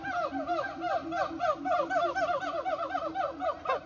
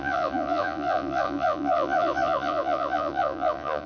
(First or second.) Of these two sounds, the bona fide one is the first